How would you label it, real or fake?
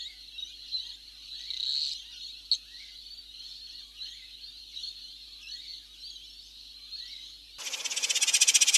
real